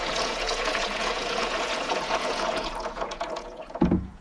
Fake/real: fake